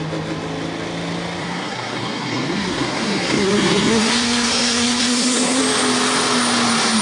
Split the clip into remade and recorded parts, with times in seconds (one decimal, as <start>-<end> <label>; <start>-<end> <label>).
0.0-1.4 recorded; 1.4-5.6 remade; 5.6-7.0 recorded